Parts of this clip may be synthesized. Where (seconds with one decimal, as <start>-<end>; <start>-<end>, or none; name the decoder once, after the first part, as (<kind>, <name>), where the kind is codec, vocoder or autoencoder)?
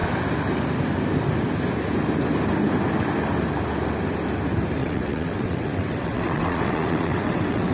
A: 4.8-7.7 (vocoder, WaveNeXt)